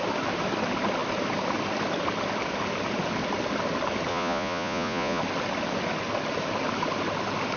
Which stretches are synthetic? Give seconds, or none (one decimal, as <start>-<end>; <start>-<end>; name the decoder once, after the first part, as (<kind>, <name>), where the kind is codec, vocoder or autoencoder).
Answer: 4.1-5.2 (vocoder, Vocos)